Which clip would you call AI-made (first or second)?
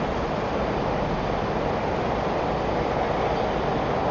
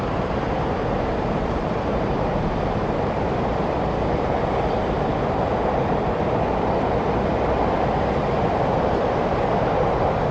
second